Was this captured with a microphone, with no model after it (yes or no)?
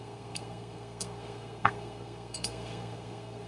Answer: no